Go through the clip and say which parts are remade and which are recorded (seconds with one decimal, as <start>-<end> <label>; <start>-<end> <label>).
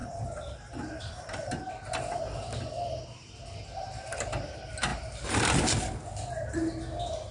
0.0-1.7 remade; 1.7-4.9 recorded; 4.9-5.6 remade; 5.6-7.3 recorded